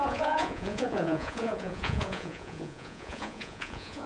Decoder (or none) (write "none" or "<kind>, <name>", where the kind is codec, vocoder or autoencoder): vocoder, Vocos